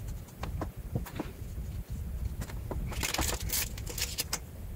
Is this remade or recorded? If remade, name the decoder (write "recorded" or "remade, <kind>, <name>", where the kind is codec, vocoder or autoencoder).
recorded